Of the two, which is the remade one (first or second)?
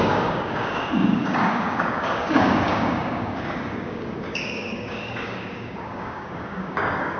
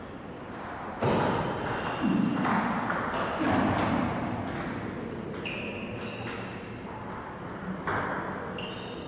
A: first